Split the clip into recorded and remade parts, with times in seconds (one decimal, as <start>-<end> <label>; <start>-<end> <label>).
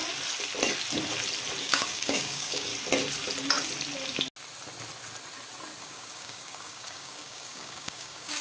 0.0-1.6 recorded; 1.6-2.7 remade; 2.7-5.8 recorded; 5.8-8.4 remade